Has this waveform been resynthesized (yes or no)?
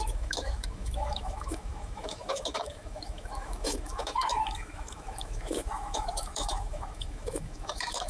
yes